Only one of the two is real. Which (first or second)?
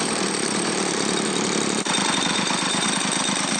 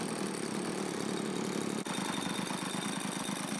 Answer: second